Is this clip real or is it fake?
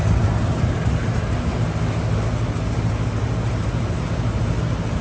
real